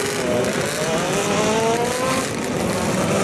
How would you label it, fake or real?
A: real